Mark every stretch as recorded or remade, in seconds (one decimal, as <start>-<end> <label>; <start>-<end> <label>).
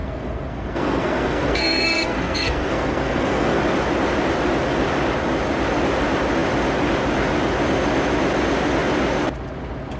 0.0-3.6 remade; 3.6-10.0 recorded